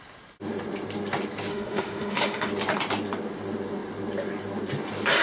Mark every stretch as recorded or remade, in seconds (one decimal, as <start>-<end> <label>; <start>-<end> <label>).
0.0-1.5 recorded; 1.5-2.5 remade; 2.5-5.2 recorded